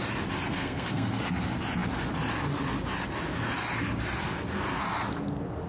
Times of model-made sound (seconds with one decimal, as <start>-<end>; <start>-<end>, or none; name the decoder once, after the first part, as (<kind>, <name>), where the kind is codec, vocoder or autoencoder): 0.5-1.2 (codec, SNAC)